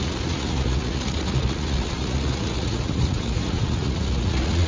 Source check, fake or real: fake